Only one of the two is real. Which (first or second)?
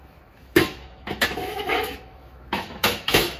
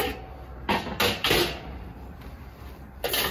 second